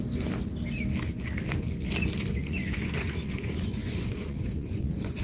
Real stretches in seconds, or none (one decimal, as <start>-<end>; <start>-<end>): 0.0-2.4